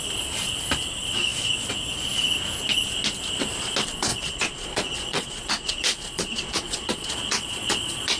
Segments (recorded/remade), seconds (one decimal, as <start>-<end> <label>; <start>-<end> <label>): 0.0-4.1 recorded; 4.1-8.2 remade